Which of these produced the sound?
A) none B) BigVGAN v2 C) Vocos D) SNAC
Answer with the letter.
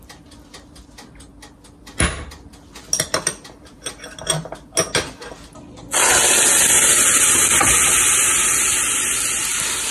A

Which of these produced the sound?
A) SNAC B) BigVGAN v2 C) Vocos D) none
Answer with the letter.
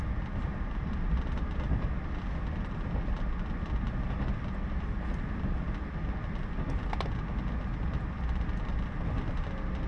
D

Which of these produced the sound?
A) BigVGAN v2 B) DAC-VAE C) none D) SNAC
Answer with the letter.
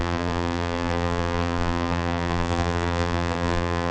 A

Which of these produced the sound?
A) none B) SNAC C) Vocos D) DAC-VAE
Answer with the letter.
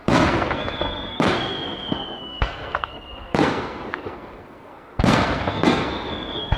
B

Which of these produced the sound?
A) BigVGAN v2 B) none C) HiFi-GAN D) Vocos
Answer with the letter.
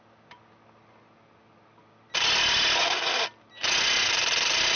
B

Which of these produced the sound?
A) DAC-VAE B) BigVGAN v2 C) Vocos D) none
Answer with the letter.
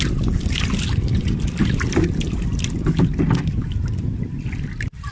D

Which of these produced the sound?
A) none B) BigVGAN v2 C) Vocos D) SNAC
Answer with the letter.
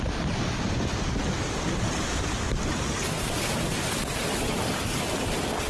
A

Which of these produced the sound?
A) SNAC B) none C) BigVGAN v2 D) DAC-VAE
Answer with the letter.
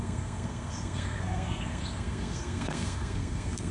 A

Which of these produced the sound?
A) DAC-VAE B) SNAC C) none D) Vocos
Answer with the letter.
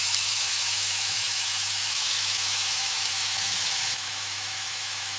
A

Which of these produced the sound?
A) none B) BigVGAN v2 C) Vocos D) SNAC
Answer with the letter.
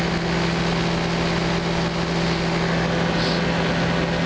A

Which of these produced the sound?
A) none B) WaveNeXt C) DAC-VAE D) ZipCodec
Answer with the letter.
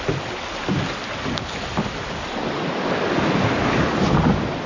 A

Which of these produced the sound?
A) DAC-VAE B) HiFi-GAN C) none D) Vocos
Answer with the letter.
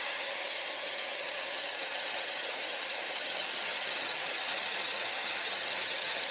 B